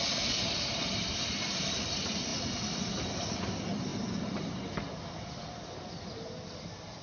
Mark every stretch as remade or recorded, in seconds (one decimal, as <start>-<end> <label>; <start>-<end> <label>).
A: 0.0-7.0 recorded